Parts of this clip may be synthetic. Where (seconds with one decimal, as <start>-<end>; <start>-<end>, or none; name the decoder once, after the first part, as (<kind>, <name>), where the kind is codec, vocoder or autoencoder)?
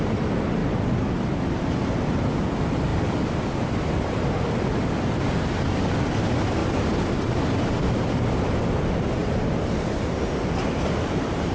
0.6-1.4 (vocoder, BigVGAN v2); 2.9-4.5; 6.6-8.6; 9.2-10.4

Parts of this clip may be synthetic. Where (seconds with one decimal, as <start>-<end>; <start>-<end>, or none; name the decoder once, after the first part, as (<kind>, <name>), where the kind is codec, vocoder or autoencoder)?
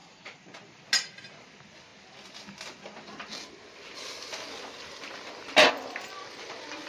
0.0-0.8 (vocoder, BigVGAN v2)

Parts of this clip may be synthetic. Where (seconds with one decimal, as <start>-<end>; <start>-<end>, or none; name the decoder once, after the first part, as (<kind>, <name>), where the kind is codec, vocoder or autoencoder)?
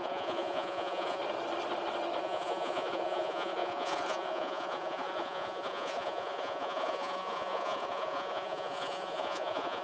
0.0-1.2 (vocoder, Vocos); 2.2-9.8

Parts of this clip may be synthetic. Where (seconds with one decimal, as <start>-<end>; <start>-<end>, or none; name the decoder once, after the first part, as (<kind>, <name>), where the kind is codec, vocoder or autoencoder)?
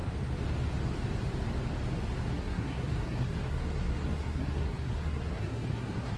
2.3-6.2 (codec, SNAC)